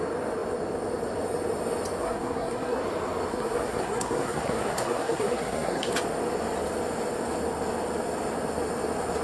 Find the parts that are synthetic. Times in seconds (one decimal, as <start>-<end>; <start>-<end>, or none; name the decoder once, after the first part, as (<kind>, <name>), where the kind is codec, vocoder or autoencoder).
2.0-2.8 (codec, SNAC); 3.3-5.9